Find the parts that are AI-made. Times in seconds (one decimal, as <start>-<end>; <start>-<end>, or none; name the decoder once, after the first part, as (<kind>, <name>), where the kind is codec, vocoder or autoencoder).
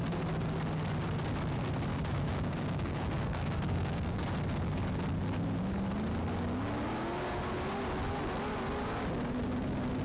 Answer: 1.9-4.2 (codec, DAC)